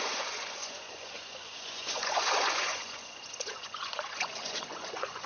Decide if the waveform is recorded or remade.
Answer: remade